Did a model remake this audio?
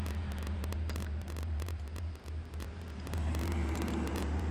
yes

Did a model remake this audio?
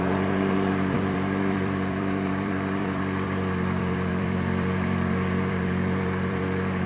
yes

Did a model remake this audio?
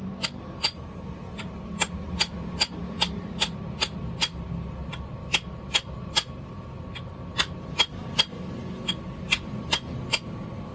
no